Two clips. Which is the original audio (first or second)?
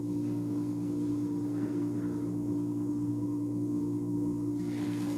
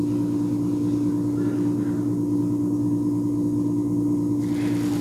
second